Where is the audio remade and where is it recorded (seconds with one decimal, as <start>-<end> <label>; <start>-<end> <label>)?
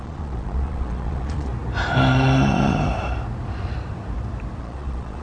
0.0-1.5 remade; 1.5-4.6 recorded; 4.6-5.2 remade